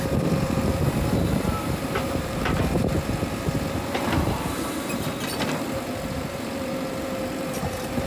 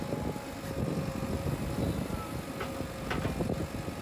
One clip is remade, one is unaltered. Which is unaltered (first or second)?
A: second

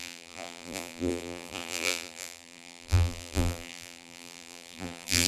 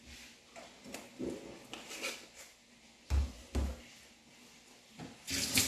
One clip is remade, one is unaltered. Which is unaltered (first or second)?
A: second